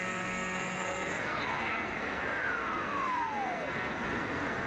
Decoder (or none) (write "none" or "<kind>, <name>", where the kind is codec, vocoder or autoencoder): codec, SNAC